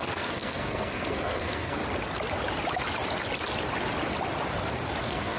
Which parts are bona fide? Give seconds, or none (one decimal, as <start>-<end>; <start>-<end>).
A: 1.8-5.0